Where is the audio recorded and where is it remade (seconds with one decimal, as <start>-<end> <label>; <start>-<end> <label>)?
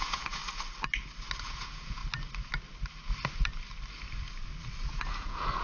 0.0-0.4 remade; 0.4-1.4 recorded; 1.4-2.0 remade; 2.0-4.9 recorded; 4.9-5.6 remade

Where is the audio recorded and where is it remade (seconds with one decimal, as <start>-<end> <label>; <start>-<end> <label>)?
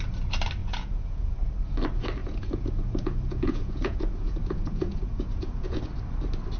0.0-0.6 recorded; 0.6-1.3 remade; 1.3-2.2 recorded; 2.2-5.8 remade; 5.8-6.6 recorded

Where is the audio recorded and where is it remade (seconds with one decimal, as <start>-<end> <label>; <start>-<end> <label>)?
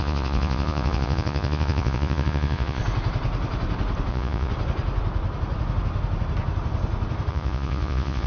0.0-2.8 remade; 2.8-4.1 recorded; 4.1-4.5 remade; 4.5-7.3 recorded; 7.3-8.3 remade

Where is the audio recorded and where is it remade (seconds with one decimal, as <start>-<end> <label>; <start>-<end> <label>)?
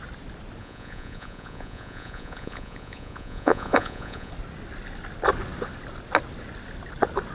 0.0-0.6 recorded; 0.6-4.3 remade; 4.3-7.3 recorded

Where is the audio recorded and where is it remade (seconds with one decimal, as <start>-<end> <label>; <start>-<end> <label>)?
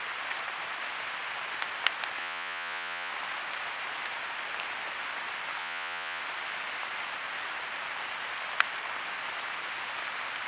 0.0-2.2 recorded; 2.2-3.1 remade; 3.1-5.6 recorded; 5.6-6.2 remade; 6.2-10.5 recorded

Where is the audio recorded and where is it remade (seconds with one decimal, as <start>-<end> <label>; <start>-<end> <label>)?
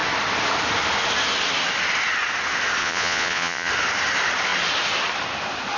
0.0-2.8 recorded; 2.8-3.7 remade; 3.7-5.8 recorded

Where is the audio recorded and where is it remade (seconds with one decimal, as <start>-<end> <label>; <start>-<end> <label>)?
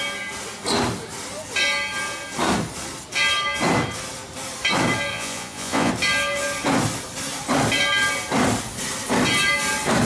0.0-5.1 recorded; 5.1-5.9 remade; 5.9-10.1 recorded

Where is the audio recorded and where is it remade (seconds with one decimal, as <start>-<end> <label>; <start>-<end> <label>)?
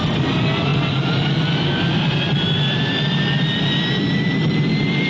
0.0-5.1 recorded